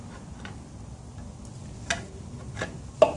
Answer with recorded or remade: recorded